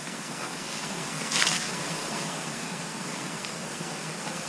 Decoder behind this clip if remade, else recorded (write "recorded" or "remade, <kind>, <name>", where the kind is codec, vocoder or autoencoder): remade, codec, SNAC